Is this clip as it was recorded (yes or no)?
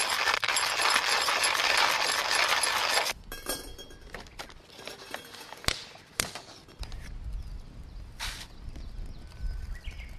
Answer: yes